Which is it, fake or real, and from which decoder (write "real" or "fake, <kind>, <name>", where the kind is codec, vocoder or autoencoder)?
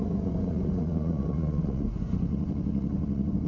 fake, vocoder, Vocos